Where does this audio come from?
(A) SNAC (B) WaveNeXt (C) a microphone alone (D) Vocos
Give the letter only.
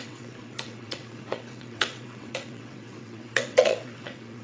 B